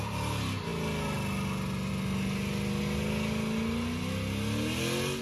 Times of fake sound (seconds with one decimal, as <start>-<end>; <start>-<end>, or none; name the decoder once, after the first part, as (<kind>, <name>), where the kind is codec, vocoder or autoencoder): none